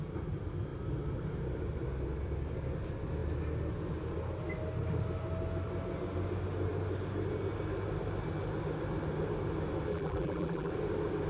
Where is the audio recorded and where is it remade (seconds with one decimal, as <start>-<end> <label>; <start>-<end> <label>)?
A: 0.0-9.9 recorded; 9.9-10.7 remade; 10.7-11.3 recorded